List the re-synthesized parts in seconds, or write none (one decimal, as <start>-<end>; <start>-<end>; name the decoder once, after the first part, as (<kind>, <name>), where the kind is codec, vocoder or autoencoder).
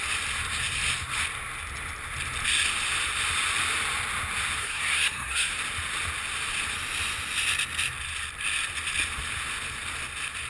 4.6-5.5 (codec, SNAC)